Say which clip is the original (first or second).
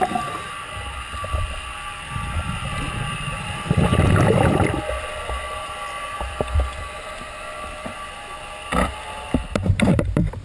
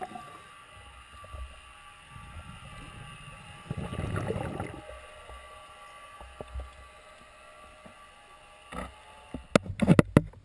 second